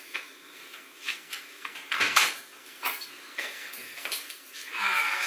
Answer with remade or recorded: remade